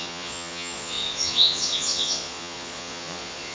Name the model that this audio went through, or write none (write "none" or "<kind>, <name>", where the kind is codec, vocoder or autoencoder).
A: vocoder, Vocos